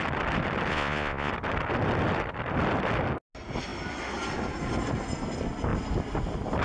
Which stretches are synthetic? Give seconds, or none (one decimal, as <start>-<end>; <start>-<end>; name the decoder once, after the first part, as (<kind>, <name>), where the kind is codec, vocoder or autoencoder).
0.7-1.3 (vocoder, Vocos)